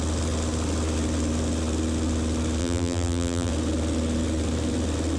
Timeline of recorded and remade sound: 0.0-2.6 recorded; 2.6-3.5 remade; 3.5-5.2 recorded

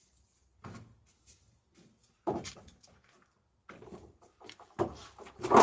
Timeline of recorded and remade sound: 0.0-5.6 recorded

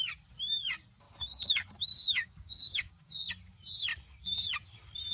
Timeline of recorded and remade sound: 0.0-1.9 recorded; 1.9-3.3 remade; 3.3-5.1 recorded

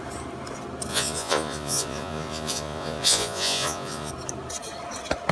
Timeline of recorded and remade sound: 0.0-0.9 recorded; 0.9-4.1 remade; 4.1-5.3 recorded

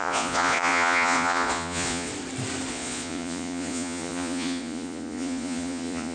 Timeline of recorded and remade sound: 0.0-2.1 remade; 2.1-2.7 recorded; 2.7-6.1 remade

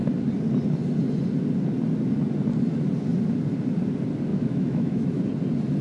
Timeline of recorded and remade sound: 0.0-4.3 recorded; 4.3-5.2 remade; 5.2-5.8 recorded

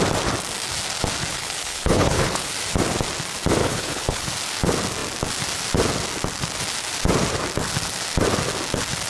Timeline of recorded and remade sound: 0.0-1.3 recorded; 1.3-2.5 remade; 2.5-3.6 recorded; 3.6-4.3 remade; 4.3-9.1 recorded

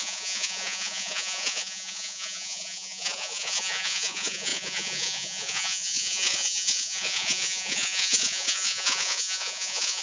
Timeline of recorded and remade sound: 0.0-10.0 remade